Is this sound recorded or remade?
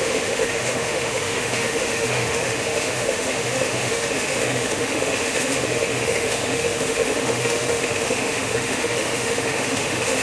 remade